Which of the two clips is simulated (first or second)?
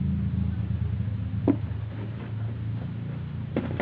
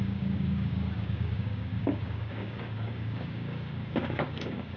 second